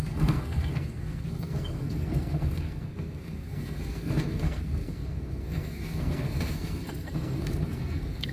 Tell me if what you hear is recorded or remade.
remade